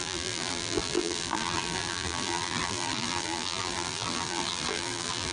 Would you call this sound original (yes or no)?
no